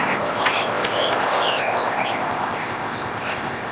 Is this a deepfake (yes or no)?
yes